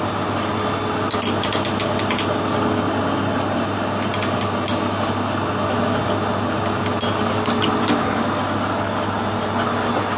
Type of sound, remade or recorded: recorded